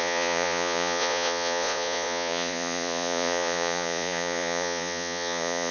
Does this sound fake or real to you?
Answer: fake